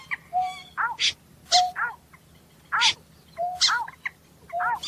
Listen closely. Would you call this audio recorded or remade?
recorded